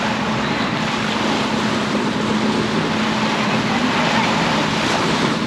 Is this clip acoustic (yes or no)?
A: yes